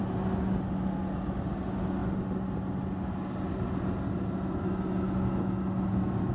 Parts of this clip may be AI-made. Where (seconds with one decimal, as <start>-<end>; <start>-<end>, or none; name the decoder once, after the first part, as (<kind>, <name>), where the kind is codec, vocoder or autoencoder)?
none